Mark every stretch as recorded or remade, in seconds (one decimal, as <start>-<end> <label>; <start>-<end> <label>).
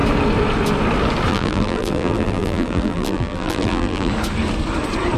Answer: 0.0-1.3 recorded; 1.3-4.1 remade; 4.1-5.2 recorded